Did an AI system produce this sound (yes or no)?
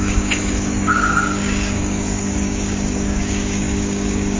yes